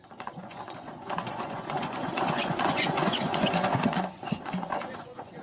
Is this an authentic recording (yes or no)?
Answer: no